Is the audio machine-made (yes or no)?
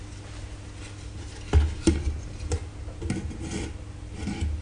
no